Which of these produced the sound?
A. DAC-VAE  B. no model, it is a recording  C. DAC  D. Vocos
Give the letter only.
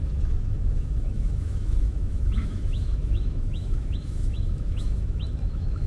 A